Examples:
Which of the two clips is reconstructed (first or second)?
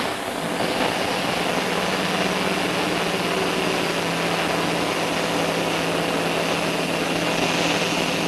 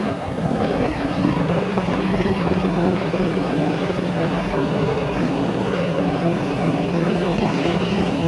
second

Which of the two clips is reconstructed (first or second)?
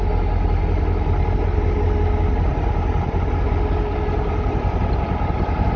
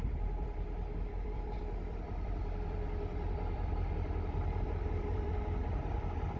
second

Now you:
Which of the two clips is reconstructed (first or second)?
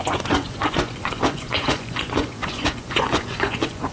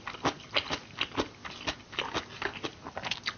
first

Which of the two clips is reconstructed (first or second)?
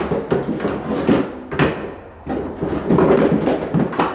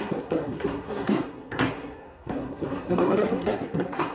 second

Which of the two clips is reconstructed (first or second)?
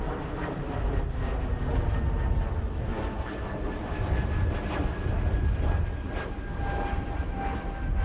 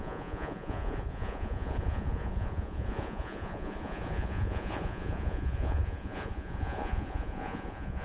second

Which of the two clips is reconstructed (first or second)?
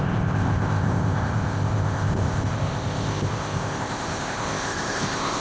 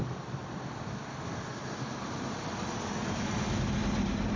first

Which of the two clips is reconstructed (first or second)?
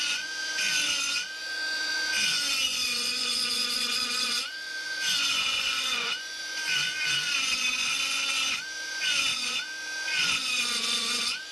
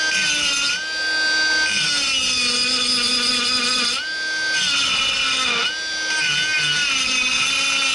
first